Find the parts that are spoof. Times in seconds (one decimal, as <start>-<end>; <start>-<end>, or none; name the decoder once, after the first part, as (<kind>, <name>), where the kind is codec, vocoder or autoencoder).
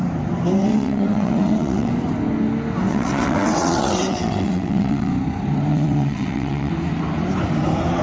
0.6-1.9 (vocoder, WaveNeXt); 2.9-5.1; 5.7-6.7